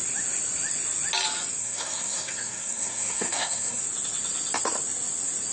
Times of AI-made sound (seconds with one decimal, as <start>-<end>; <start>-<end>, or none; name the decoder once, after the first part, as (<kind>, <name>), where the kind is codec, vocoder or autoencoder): 1.6-3.8 (codec, SNAC)